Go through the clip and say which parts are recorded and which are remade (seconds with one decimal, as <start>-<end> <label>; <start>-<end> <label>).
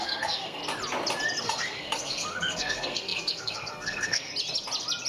0.0-0.6 remade; 0.6-1.4 recorded; 1.4-4.3 remade; 4.3-5.1 recorded